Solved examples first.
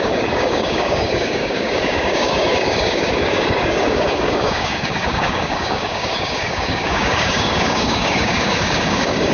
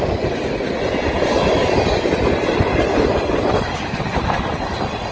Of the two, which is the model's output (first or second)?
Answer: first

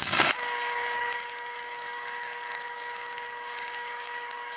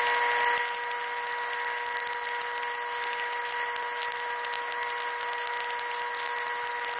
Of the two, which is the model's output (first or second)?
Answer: first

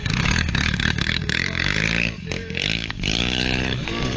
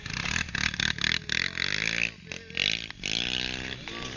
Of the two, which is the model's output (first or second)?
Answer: first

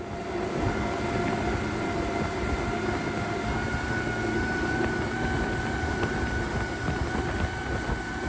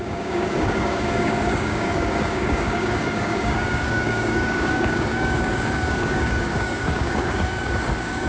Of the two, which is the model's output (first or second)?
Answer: second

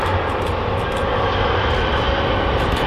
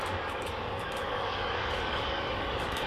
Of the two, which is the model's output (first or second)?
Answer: second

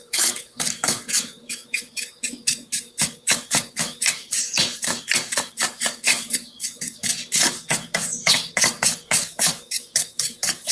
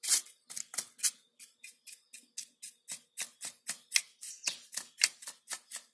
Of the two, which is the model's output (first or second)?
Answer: first